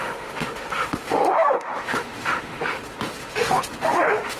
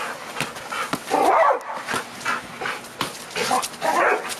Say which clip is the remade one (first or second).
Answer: first